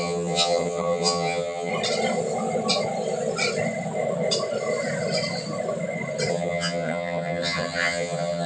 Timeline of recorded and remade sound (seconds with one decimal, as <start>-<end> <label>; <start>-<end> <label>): 0.0-1.7 remade; 1.7-6.3 recorded; 6.3-8.5 remade